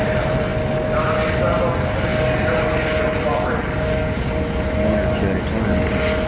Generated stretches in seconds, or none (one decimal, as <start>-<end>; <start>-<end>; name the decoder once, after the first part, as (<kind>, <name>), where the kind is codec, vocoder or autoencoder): 0.0-0.5 (vocoder, BigVGAN v2); 1.5-2.1